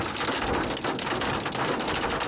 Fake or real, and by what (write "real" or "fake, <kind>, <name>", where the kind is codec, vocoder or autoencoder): real